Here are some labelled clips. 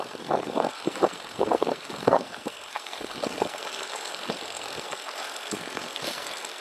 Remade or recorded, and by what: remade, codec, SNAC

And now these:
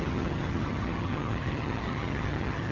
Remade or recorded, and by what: remade, vocoder, HiFi-GAN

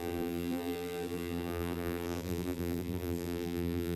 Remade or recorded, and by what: remade, vocoder, BigVGAN v2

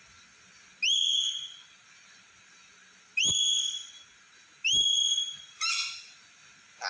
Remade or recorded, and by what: recorded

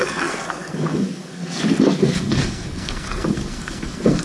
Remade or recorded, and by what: remade, codec, SNAC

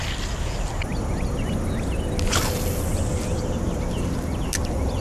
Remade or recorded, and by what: recorded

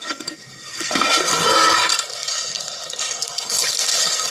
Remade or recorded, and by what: remade, codec, SNAC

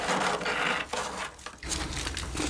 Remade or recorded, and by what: recorded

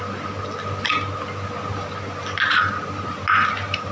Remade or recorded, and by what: recorded